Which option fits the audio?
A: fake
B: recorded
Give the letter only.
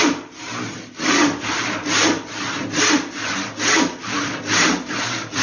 B